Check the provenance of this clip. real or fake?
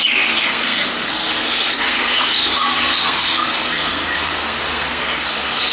fake